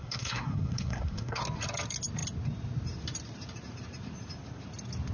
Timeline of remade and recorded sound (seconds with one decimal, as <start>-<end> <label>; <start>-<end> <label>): 0.0-1.4 remade; 1.4-5.1 recorded